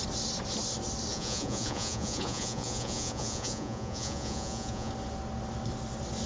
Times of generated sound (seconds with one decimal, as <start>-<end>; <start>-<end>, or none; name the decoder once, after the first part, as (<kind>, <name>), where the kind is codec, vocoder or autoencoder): 1.1-4.9 (vocoder, Vocos)